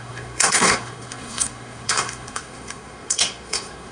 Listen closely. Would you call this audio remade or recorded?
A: remade